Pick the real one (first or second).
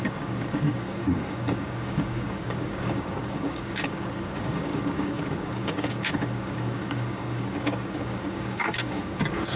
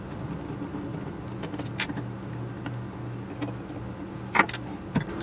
second